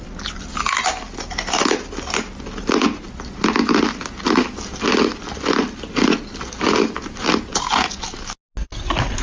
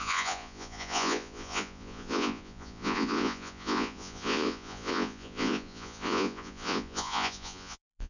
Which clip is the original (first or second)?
first